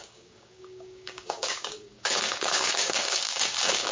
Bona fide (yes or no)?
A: no